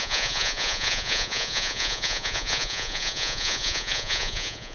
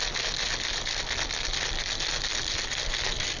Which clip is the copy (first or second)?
first